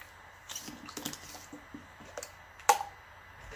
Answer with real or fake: real